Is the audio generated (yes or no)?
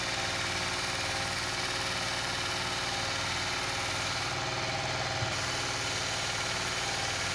no